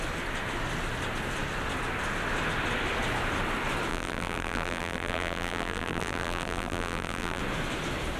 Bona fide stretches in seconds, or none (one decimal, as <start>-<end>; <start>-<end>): 0.0-3.9; 7.4-8.2